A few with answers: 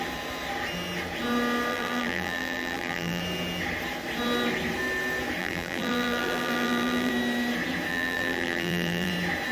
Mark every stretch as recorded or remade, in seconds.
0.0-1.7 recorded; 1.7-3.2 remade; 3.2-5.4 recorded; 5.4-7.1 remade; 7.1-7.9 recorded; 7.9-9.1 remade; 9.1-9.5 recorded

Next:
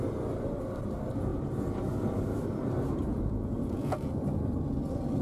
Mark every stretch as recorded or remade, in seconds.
0.0-3.1 recorded; 3.1-4.1 remade; 4.1-5.2 recorded

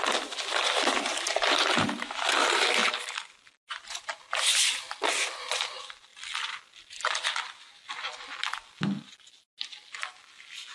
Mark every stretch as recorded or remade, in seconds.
0.0-10.7 recorded

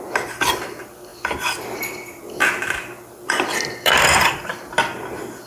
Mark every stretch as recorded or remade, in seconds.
0.0-1.1 recorded; 1.1-4.4 remade; 4.4-5.5 recorded

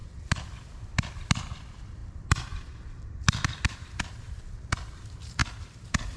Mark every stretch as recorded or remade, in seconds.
0.0-5.4 remade; 5.4-6.2 recorded

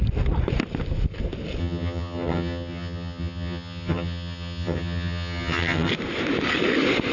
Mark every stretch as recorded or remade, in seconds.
0.0-1.6 recorded; 1.6-5.9 remade; 5.9-7.1 recorded

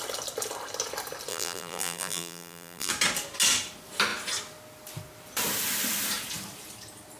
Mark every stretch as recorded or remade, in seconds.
0.0-1.3 recorded; 1.3-2.9 remade; 2.9-7.2 recorded